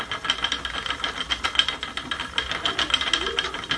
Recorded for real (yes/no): yes